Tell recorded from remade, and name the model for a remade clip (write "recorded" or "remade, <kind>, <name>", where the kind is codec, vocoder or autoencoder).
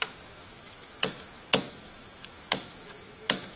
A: remade, autoencoder, DAC-VAE